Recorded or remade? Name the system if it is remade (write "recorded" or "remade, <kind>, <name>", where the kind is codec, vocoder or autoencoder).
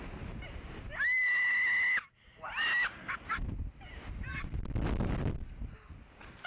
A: recorded